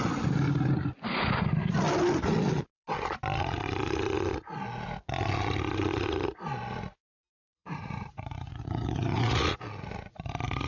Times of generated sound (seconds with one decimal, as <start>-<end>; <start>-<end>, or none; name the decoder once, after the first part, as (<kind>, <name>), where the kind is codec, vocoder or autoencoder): 7.5-9.5 (vocoder, Vocos)

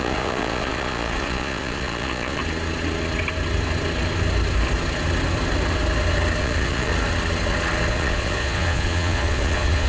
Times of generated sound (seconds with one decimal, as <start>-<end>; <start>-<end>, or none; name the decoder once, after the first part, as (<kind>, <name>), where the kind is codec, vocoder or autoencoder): 0.0-2.4 (vocoder, Vocos); 6.4-6.9; 7.9-9.9

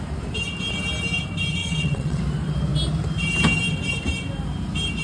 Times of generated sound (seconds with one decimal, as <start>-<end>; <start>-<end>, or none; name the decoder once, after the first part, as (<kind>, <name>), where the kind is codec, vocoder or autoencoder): 1.6-2.2 (vocoder, WaveNeXt)

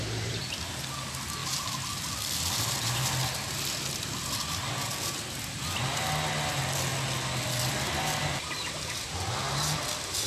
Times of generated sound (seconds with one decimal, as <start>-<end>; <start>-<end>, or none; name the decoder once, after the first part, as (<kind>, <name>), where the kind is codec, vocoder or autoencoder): none

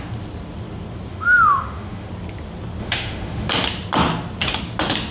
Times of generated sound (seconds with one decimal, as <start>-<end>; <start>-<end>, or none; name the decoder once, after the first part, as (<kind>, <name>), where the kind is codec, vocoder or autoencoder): 1.1-2.1 (autoencoder, DAC-VAE); 2.8-3.5

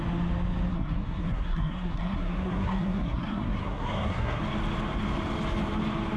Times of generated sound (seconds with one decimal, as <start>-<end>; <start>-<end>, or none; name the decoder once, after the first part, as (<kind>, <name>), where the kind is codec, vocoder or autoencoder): 0.7-4.4 (codec, SNAC)